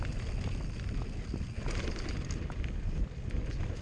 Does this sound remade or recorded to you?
recorded